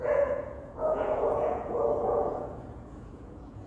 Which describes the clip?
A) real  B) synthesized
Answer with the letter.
B